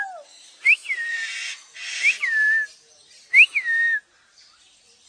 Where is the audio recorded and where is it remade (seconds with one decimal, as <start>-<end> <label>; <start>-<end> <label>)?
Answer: 0.0-0.8 recorded; 0.8-1.3 remade; 1.3-5.1 recorded